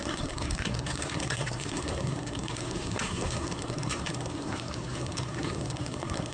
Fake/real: fake